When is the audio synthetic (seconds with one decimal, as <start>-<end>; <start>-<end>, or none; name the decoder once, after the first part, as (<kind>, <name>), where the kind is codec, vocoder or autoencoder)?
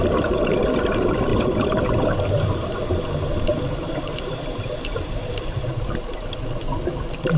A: 1.3-2.3 (vocoder, BigVGAN v2); 3.5-6.0